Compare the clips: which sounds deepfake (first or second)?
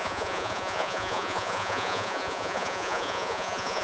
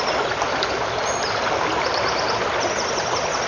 first